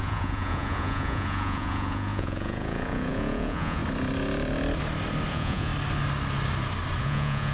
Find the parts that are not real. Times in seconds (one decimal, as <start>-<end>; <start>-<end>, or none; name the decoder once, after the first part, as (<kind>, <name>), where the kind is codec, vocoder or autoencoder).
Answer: 0.0-3.8 (vocoder, Vocos); 5.3-5.7; 7.0-7.5